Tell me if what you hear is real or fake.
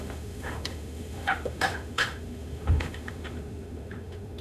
fake